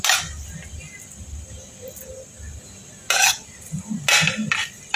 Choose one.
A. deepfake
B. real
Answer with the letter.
B